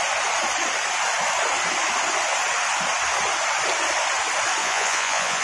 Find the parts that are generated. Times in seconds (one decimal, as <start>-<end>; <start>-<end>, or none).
4.6-5.4